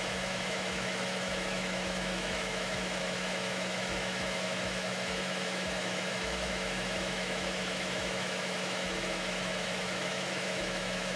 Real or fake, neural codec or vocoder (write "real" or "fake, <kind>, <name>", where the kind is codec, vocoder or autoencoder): fake, autoencoder, DAC-VAE